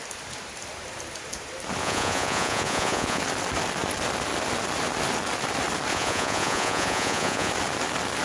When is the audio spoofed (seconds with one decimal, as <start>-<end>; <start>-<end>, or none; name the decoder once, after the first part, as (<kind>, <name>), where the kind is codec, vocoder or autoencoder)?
1.8-3.2 (vocoder, Vocos); 5.9-7.5